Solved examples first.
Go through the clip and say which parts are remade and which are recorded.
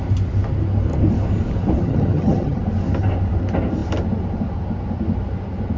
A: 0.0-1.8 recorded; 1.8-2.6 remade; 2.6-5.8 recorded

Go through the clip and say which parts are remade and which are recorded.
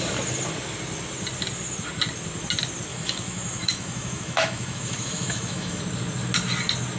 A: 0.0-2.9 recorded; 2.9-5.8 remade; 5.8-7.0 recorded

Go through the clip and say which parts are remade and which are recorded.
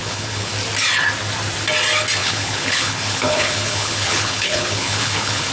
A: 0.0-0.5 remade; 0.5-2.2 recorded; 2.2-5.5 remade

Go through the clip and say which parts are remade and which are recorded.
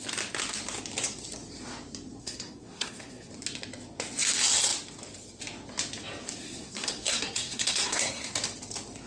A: 0.0-2.2 recorded; 2.2-3.3 remade; 3.3-6.4 recorded; 6.4-8.3 remade; 8.3-9.1 recorded